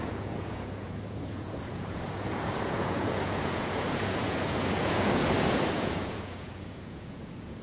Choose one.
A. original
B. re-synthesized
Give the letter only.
B